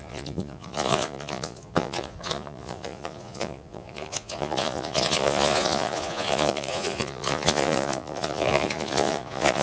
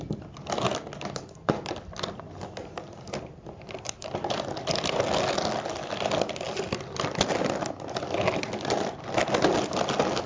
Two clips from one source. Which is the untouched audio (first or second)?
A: second